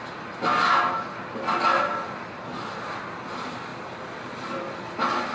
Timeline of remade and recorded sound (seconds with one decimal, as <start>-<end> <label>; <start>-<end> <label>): 0.0-5.3 recorded